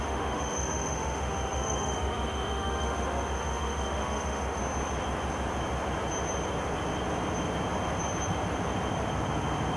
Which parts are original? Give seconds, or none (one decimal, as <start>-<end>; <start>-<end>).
4.6-9.8